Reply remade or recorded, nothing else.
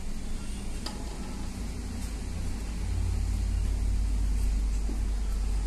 recorded